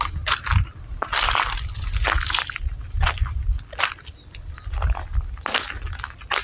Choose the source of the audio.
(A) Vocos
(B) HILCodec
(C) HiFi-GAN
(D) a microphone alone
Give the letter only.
D